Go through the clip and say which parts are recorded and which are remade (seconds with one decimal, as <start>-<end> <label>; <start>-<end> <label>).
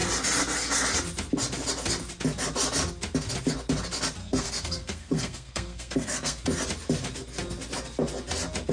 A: 0.0-4.2 recorded; 4.2-6.4 remade; 6.4-8.7 recorded